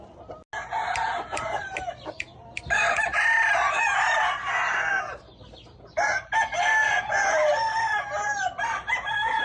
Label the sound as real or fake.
real